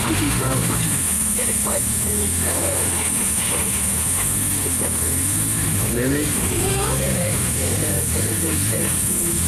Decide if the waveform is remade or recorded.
remade